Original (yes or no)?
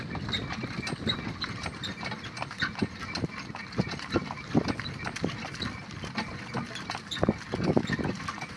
yes